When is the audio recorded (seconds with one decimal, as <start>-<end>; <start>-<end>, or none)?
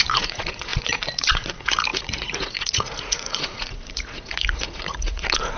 none